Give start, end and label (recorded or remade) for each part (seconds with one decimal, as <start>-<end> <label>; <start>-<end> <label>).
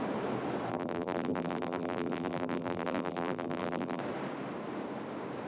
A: 0.0-0.7 recorded; 0.7-4.0 remade; 4.0-5.5 recorded